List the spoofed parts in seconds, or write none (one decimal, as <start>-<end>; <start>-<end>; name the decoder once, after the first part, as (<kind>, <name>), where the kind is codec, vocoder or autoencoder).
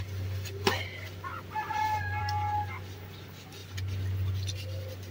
none